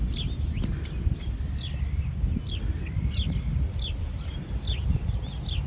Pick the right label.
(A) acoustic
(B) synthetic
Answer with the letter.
A